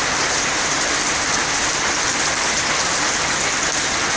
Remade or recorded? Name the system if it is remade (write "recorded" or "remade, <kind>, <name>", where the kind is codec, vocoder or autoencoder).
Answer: remade, vocoder, BigVGAN v2